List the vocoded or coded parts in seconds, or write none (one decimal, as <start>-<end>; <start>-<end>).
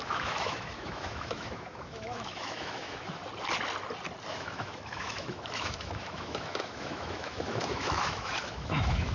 0.0-3.2; 4.3-9.1